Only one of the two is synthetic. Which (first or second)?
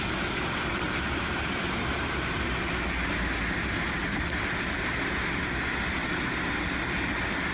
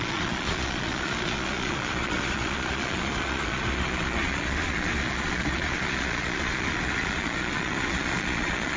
second